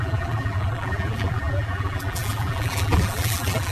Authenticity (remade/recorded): remade